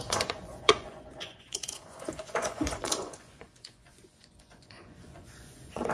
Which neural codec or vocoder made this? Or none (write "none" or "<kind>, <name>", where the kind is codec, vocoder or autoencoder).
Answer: vocoder, Vocos